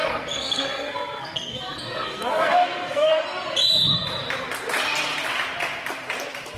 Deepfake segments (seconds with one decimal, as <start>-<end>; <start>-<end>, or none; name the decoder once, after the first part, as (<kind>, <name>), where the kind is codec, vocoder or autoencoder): 0.0-3.1 (codec, SNAC)